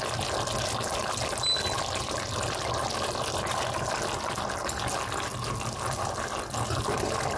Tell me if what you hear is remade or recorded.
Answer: recorded